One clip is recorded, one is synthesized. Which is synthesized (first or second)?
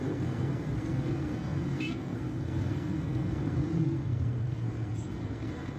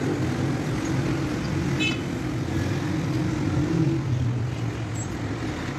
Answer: first